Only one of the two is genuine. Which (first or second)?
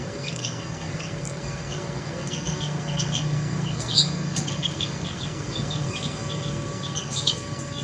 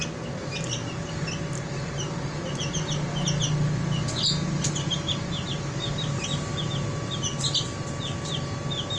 second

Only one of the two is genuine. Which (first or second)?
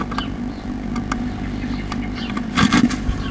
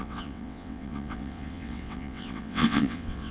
first